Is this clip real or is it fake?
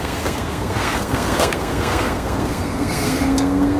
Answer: fake